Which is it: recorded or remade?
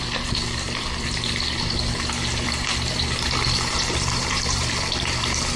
remade